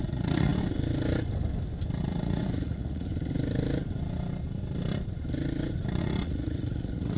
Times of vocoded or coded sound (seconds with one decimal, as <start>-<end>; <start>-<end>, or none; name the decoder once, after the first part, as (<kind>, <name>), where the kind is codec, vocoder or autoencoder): 0.0-0.5 (vocoder, Vocos); 2.0-3.1; 6.0-7.2